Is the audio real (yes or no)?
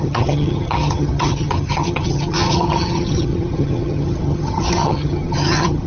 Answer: no